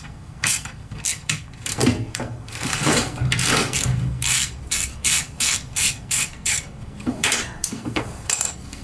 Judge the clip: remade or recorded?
remade